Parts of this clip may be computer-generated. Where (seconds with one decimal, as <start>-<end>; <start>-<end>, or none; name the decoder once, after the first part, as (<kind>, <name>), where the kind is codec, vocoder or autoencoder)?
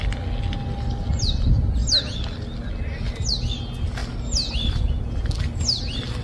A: none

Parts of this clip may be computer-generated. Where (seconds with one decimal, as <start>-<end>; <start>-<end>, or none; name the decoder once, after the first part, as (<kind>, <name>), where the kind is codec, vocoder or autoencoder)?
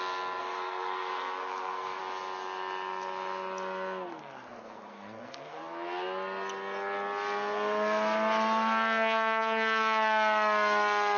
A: 0.4-2.0 (codec, SNAC); 4.1-5.6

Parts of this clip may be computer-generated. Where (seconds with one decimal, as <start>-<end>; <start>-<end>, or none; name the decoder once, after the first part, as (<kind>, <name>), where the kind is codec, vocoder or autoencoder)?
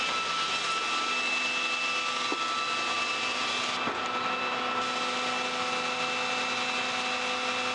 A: none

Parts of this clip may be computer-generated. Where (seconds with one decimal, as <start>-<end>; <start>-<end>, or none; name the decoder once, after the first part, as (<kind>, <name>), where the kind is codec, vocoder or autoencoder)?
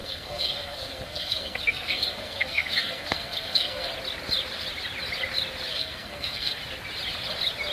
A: 0.0-3.9 (codec, SNAC); 5.7-6.6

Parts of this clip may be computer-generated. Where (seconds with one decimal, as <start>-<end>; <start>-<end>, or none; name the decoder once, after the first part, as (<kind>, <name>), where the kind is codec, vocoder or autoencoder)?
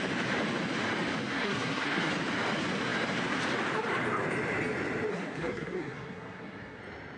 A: 1.2-2.1 (codec, SNAC); 5.1-6.8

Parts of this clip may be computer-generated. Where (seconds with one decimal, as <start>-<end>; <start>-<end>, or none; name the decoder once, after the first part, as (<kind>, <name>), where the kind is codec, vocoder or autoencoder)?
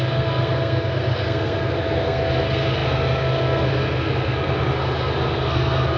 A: 0.0-6.0 (codec, SNAC)